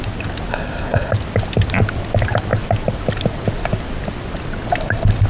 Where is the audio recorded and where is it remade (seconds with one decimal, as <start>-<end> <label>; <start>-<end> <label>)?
0.0-0.5 recorded; 0.5-1.1 remade; 1.1-5.3 recorded